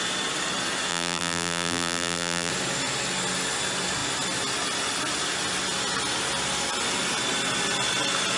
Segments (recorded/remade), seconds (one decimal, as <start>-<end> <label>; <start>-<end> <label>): 0.0-0.9 recorded; 0.9-2.5 remade; 2.5-8.4 recorded